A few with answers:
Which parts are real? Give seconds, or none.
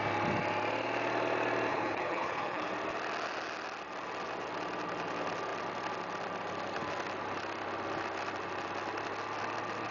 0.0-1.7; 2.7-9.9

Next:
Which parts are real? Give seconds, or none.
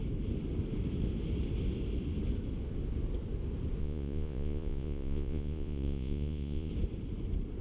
0.0-3.8; 6.7-7.6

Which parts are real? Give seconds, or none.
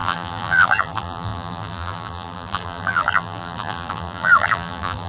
none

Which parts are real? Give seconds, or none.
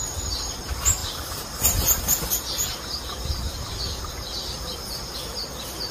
0.0-5.9